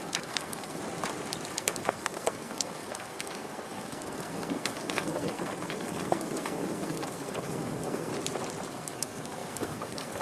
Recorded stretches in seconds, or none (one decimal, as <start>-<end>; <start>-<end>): 0.8-1.5; 8.1-8.7